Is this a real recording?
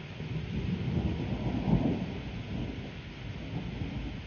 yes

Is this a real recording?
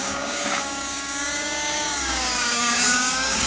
no